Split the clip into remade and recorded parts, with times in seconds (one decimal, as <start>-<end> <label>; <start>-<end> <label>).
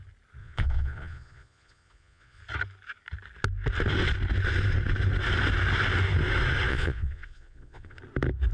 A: 0.0-0.4 recorded; 0.4-2.4 remade; 2.4-6.7 recorded; 6.7-8.0 remade; 8.0-8.5 recorded